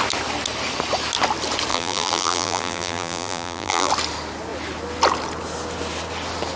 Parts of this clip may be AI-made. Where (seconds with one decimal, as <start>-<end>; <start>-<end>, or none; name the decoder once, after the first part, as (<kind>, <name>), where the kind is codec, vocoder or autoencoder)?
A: 1.7-3.9 (vocoder, BigVGAN v2)